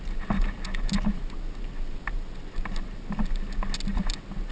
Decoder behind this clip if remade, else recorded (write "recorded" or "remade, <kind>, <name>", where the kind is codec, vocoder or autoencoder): recorded